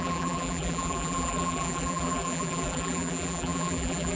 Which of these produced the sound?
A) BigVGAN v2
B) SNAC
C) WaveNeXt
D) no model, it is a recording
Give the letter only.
A